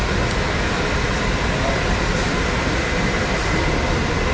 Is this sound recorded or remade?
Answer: recorded